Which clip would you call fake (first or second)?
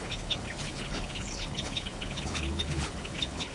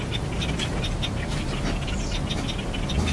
first